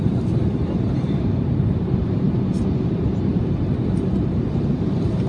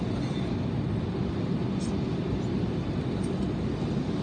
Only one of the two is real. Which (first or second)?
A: second